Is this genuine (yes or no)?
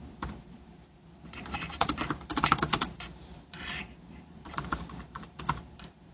no